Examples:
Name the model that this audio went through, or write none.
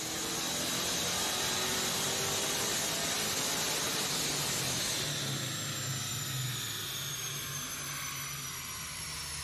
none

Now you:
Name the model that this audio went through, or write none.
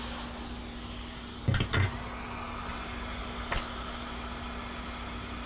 none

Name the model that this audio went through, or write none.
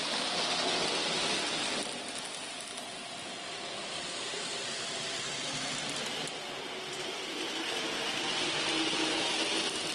none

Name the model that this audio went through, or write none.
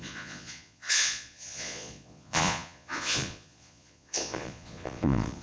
vocoder, Vocos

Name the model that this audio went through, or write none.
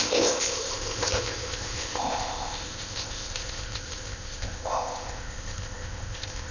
codec, ZipCodec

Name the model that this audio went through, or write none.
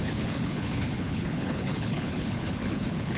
codec, HILCodec